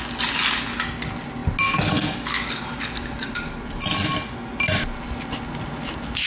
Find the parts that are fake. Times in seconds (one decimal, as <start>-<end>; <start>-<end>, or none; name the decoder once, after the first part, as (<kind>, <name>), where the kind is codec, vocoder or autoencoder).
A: none